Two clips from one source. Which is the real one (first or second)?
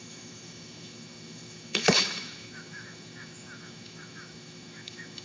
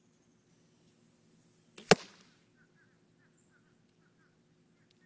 second